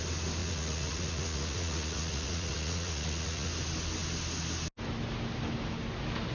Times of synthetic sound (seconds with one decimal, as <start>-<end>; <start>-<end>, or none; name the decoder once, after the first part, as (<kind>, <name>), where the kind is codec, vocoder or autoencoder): 0.4-3.5 (vocoder, Vocos)